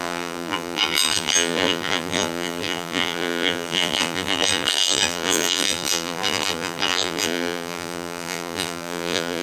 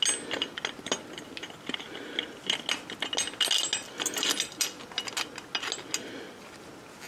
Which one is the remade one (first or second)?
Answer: first